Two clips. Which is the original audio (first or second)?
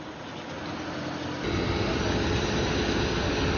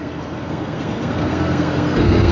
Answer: first